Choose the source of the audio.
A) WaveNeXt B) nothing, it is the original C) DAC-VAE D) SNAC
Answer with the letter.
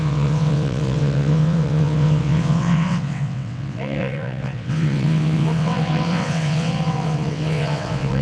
A